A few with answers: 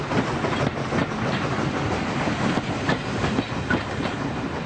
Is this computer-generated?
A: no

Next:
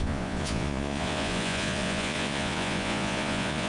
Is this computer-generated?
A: yes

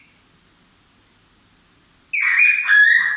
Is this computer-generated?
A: no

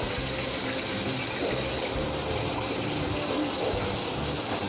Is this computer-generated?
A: no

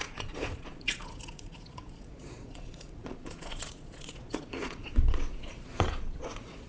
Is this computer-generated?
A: yes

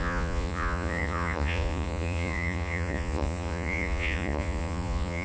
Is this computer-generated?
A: yes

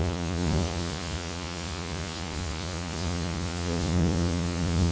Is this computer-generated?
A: yes